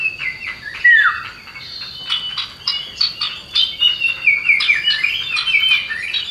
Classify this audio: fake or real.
real